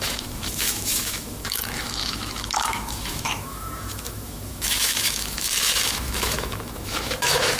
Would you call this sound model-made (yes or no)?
yes